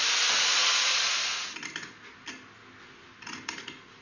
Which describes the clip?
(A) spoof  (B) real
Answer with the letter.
B